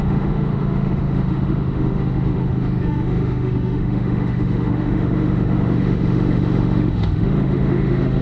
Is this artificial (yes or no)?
yes